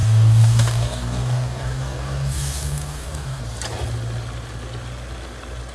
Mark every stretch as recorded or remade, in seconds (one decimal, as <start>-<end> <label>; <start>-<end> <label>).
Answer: 0.0-3.4 remade; 3.4-5.7 recorded